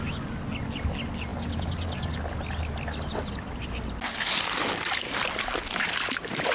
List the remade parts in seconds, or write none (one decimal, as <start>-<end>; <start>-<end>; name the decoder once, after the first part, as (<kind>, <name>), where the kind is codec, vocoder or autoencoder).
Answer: none